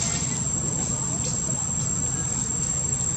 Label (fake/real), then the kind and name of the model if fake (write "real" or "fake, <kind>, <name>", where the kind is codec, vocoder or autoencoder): real